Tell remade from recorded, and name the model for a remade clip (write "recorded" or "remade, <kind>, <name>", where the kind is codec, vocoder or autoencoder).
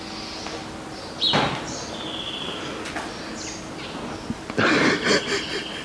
recorded